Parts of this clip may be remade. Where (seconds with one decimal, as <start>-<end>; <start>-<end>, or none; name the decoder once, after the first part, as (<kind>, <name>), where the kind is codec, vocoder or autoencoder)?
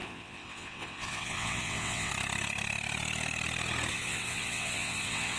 0.0-2.1 (vocoder, WaveNeXt); 3.9-5.4